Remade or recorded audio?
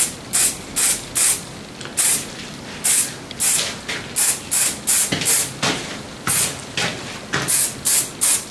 recorded